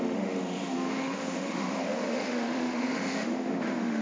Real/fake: fake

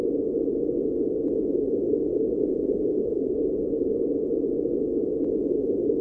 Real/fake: real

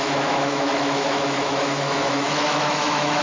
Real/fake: fake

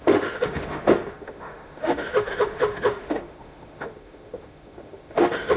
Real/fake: fake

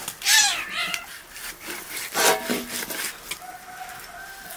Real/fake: real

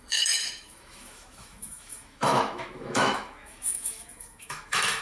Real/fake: fake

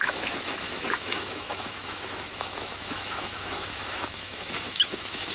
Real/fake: fake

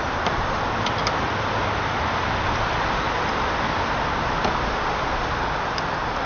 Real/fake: real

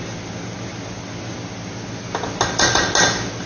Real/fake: real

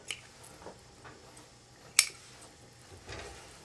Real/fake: real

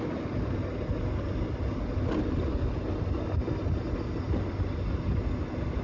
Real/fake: real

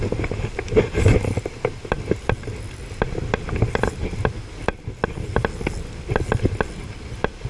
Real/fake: real